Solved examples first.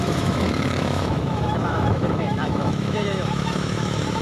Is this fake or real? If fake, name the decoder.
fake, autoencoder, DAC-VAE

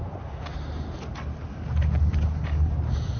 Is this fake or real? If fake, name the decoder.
real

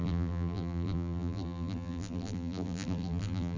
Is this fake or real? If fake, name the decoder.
fake, vocoder, BigVGAN v2